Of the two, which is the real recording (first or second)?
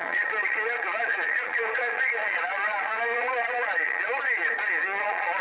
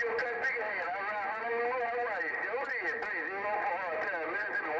second